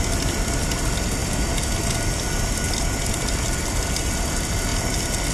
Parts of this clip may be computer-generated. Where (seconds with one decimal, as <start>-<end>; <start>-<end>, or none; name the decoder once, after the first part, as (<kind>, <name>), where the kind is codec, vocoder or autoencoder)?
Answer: none

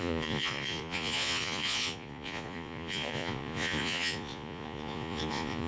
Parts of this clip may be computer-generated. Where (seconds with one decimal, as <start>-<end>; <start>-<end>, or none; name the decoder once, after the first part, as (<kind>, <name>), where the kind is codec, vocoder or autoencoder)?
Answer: 0.0-5.7 (vocoder, Vocos)

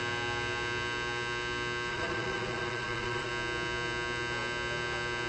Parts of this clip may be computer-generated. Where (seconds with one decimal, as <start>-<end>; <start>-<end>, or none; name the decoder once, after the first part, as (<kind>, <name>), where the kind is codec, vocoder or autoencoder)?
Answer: 1.9-3.3 (vocoder, Vocos)

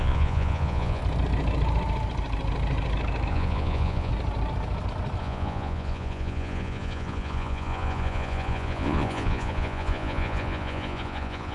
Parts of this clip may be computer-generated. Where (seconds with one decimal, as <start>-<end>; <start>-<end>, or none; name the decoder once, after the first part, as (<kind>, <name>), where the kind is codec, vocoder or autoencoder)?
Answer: 0.0-1.0 (vocoder, Vocos); 3.3-4.1; 5.2-11.5

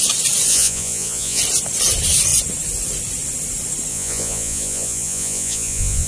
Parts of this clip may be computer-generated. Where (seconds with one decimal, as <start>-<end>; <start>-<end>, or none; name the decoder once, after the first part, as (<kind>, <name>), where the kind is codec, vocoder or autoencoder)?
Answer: 0.5-1.4 (vocoder, Vocos); 3.9-6.1

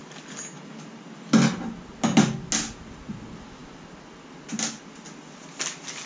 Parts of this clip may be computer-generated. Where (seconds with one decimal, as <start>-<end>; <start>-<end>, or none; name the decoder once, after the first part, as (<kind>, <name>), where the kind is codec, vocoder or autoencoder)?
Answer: none

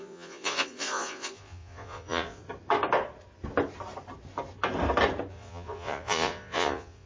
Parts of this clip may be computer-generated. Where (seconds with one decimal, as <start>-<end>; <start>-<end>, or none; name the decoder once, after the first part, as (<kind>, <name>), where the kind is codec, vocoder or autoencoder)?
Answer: 0.0-2.4 (vocoder, Vocos); 5.3-7.1